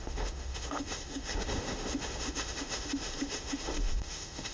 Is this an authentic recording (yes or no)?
no